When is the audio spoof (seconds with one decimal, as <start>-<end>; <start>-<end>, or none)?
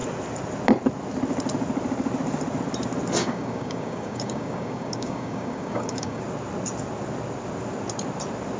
3.2-6.2